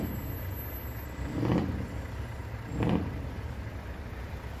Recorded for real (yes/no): yes